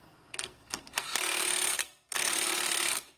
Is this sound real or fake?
fake